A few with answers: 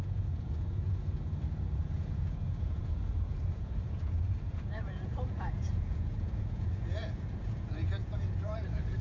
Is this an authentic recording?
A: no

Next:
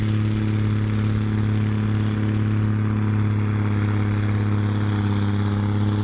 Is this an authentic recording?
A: yes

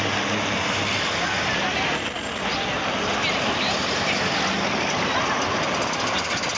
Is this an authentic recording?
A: yes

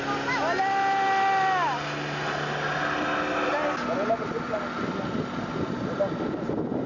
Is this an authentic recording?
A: yes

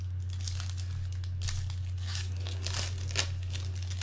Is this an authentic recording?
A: yes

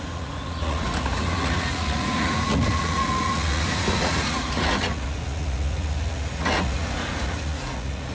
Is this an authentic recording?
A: no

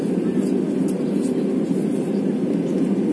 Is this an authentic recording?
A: yes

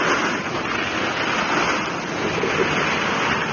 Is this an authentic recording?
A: yes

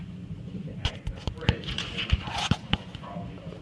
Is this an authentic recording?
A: no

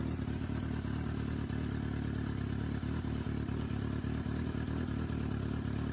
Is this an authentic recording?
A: yes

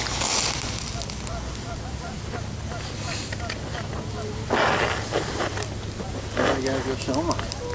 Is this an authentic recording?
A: yes